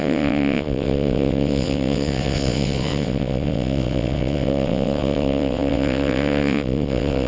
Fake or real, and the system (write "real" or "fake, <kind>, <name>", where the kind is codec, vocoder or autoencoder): fake, vocoder, WaveNeXt